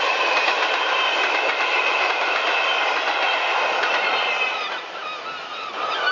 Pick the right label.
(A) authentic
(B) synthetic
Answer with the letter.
A